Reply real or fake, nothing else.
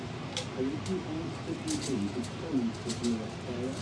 real